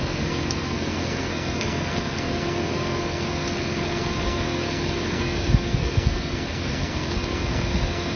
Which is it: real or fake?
fake